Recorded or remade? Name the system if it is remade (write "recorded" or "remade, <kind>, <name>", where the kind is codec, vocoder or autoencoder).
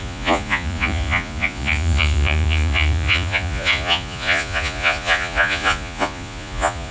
remade, vocoder, Vocos